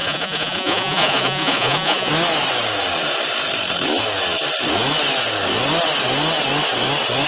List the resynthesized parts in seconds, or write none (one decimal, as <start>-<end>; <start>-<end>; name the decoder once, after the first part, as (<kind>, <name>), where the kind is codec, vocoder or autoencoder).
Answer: 0.0-2.1 (vocoder, Vocos)